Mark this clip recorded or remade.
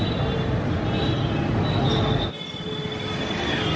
recorded